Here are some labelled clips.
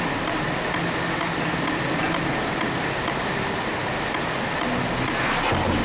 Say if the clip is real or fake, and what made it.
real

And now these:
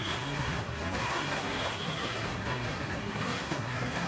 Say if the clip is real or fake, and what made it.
fake, codec, SNAC